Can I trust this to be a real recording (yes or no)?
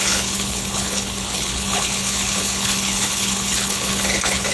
no